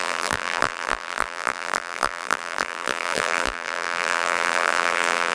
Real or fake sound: fake